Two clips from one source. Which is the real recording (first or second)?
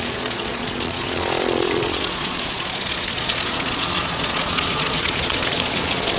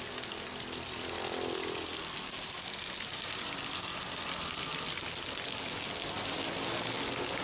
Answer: second